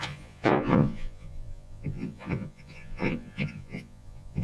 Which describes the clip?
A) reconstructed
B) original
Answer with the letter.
A